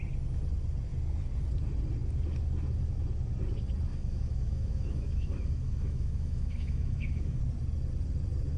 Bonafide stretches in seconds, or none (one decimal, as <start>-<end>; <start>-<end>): 0.0-3.9; 7.4-8.6